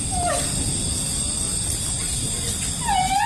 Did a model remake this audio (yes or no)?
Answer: no